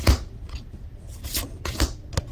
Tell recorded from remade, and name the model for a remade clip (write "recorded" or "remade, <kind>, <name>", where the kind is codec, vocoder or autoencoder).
recorded